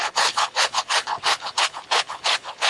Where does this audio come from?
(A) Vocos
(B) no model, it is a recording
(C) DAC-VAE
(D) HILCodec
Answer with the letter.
D